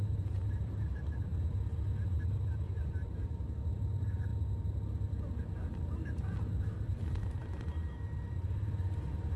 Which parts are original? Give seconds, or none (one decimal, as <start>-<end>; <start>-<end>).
1.3-2.1; 4.3-8.3